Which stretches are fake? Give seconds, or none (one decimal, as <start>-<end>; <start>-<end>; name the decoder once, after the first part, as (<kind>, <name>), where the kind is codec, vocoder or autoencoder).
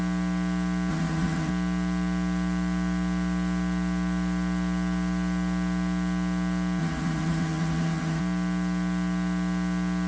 0.9-1.5 (vocoder, HiFi-GAN); 6.8-8.2